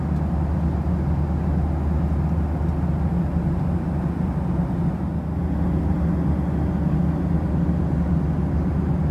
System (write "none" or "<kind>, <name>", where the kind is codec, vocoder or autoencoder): none